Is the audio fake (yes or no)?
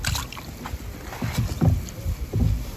no